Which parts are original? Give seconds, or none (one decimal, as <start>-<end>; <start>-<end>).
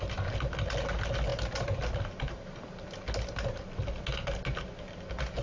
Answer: 0.0-5.4